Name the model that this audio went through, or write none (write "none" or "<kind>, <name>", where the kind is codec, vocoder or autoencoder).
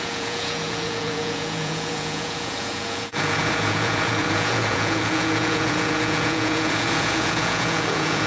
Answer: vocoder, Vocos